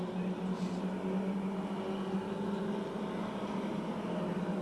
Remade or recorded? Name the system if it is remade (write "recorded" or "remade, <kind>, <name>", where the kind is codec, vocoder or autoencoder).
recorded